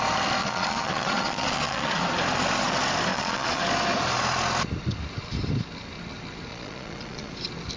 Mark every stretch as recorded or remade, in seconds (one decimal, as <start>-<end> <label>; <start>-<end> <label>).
0.0-0.4 recorded; 0.4-2.0 remade; 2.0-3.1 recorded; 3.1-3.6 remade; 3.6-6.5 recorded; 6.5-7.3 remade; 7.3-7.8 recorded